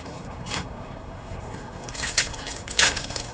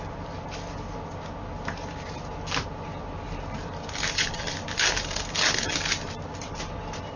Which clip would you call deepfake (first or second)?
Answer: first